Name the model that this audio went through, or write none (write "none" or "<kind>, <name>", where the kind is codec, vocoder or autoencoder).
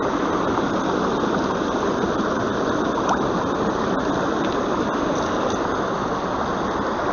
none